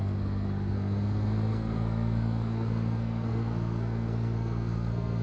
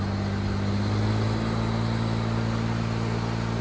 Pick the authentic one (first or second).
second